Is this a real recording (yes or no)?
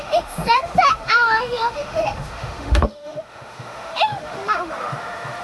no